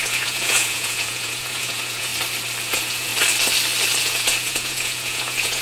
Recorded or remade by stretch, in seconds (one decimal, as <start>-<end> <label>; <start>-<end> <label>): 0.0-2.1 remade; 2.1-2.7 recorded; 2.7-3.1 remade; 3.1-4.0 recorded; 4.0-5.6 remade